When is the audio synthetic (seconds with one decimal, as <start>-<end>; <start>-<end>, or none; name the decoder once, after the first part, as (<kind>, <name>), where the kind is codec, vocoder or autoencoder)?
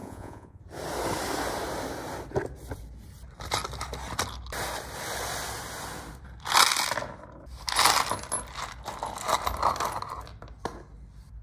0.0-0.6 (vocoder, Vocos)